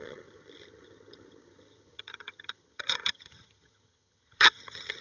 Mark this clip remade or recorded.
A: remade